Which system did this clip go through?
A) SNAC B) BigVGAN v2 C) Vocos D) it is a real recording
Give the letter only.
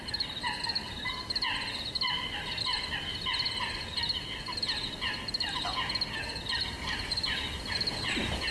D